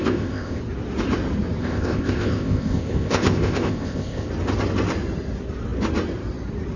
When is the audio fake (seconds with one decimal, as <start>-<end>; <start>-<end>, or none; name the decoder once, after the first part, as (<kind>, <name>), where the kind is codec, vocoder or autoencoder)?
0.0-0.6 (codec, ZipCodec); 1.6-4.3